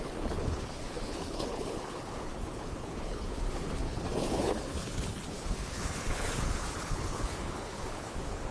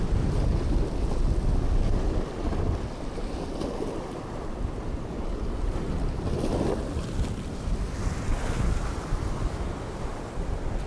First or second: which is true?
second